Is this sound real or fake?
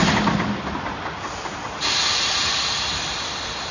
real